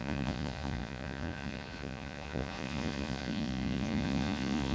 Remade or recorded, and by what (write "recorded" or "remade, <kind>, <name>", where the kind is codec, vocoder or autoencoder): remade, vocoder, Vocos